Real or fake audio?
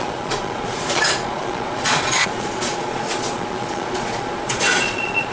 fake